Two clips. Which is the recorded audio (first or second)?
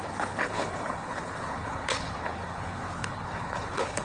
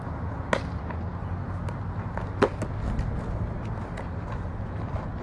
second